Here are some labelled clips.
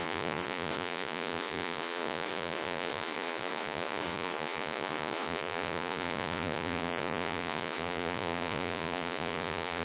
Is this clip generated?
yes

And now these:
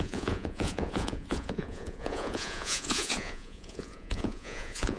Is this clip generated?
yes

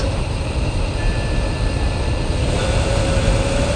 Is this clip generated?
no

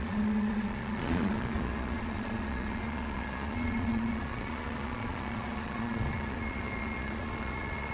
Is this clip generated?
yes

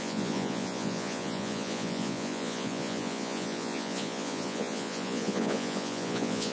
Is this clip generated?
yes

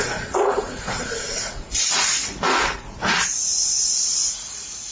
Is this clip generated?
yes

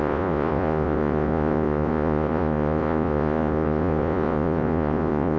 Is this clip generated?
yes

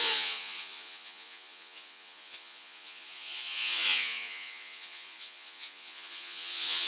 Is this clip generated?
yes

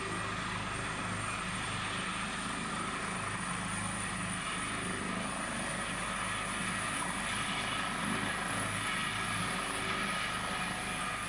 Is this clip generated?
no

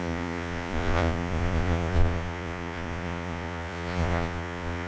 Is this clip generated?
yes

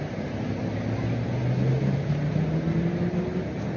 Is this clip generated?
no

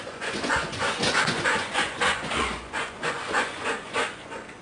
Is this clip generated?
yes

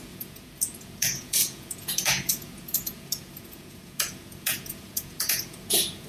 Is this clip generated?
yes